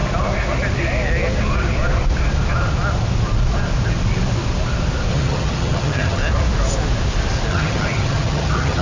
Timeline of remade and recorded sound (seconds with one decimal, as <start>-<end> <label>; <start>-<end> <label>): 0.0-5.1 recorded; 5.1-6.2 remade; 6.2-7.5 recorded; 7.5-8.8 remade